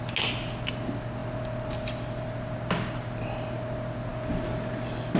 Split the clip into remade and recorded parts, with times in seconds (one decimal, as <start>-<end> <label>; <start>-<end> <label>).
0.0-5.2 recorded